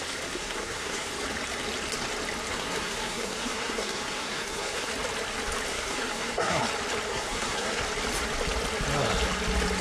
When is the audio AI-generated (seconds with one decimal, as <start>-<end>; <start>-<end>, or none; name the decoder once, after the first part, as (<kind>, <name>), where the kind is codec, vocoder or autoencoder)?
0.4-1.1 (codec, SNAC); 2.5-4.9; 5.7-6.6; 7.1-7.8